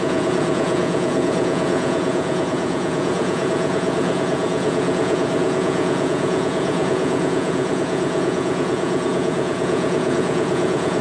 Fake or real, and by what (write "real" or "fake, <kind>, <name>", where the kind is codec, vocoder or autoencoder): fake, vocoder, Vocos